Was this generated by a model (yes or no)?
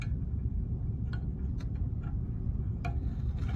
no